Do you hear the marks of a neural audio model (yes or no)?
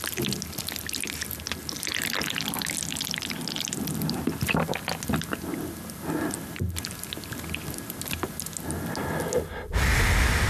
no